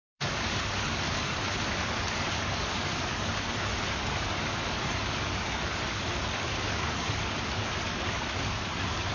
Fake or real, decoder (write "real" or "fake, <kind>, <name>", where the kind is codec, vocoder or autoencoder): fake, codec, DAC